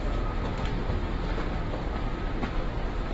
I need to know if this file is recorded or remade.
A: recorded